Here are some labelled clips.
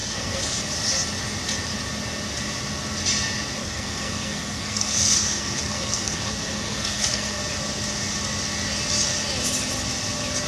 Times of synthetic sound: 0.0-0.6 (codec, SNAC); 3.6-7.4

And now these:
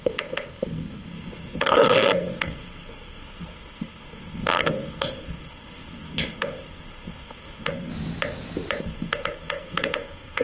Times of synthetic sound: 0.0-7.9 (codec, SNAC); 8.8-10.4

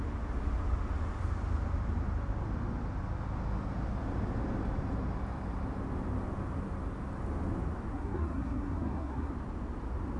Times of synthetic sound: 7.9-9.3 (codec, SNAC)

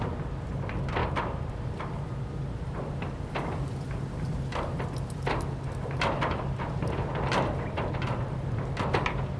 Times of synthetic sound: none